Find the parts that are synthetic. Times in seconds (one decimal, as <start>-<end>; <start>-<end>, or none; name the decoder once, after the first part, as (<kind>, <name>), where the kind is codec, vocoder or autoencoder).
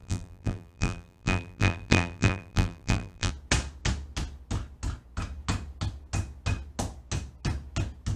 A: 0.0-3.3 (vocoder, BigVGAN v2)